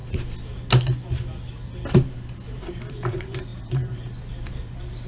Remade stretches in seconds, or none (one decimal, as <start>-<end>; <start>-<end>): 2.9-5.1